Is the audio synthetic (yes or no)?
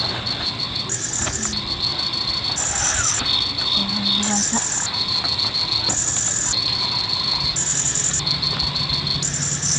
no